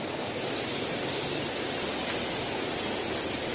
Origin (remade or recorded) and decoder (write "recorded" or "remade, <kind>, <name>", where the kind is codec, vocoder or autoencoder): recorded